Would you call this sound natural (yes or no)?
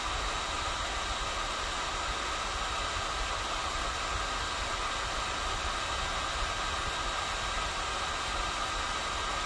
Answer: yes